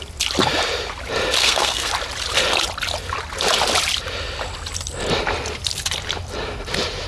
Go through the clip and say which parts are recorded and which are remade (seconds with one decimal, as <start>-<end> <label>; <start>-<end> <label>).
0.0-1.4 recorded; 1.4-1.9 remade; 1.9-7.1 recorded